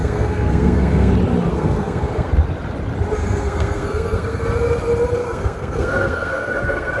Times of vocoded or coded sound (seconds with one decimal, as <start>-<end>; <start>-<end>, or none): 0.0-1.1; 1.5-2.3; 3.2-4.4; 5.2-7.0